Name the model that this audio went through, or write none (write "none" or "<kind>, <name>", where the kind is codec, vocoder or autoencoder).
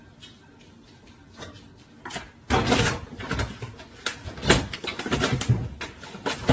none